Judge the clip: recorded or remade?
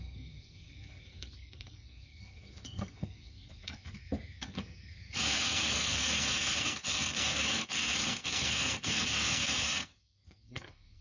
remade